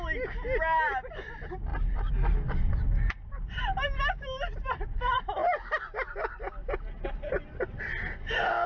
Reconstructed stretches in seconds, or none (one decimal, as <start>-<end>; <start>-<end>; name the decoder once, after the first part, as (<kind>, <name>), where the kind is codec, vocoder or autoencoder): none